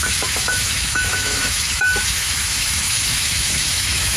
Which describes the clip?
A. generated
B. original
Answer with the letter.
A